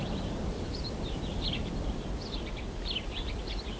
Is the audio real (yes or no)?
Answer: no